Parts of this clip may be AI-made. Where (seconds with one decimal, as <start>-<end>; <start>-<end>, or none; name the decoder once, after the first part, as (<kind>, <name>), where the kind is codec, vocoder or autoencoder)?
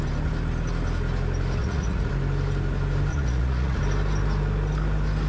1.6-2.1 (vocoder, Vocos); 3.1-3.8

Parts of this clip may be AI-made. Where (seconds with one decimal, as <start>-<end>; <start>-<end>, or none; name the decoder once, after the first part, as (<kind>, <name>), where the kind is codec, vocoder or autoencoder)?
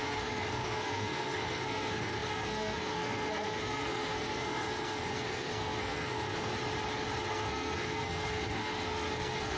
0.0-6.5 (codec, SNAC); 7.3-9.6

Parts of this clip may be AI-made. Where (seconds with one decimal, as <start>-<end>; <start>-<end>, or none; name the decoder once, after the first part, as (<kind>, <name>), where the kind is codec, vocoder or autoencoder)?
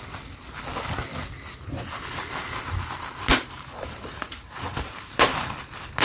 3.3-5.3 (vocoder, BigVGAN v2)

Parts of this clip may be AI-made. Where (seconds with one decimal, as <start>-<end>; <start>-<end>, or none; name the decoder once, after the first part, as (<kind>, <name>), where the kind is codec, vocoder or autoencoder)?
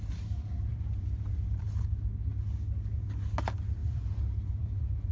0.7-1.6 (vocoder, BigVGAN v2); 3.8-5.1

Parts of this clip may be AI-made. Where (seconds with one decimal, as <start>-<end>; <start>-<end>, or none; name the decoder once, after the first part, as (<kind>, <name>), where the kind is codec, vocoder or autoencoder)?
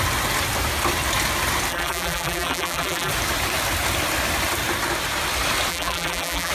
1.7-3.1 (vocoder, BigVGAN v2); 5.7-6.5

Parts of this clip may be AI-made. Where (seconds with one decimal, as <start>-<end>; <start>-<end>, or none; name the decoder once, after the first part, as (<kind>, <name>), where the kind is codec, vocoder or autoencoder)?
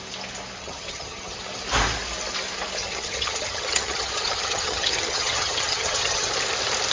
0.6-1.4 (vocoder, HiFi-GAN); 2.8-6.3